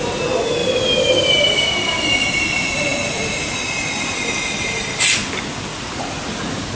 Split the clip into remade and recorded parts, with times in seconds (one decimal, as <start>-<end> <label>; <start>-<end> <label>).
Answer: 0.0-5.7 recorded; 5.7-6.7 remade